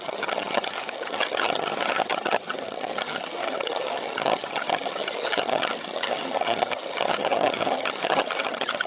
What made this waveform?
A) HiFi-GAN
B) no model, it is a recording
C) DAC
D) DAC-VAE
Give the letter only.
A